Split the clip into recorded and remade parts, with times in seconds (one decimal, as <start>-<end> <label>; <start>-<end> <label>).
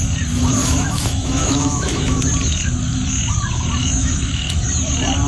0.0-0.6 recorded; 0.6-2.2 remade; 2.2-3.8 recorded; 3.8-4.6 remade; 4.6-5.3 recorded